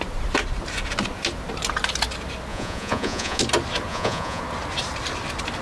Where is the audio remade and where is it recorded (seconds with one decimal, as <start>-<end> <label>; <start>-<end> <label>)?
0.0-2.5 recorded; 2.5-3.4 remade; 3.4-3.9 recorded; 3.9-4.4 remade; 4.4-5.6 recorded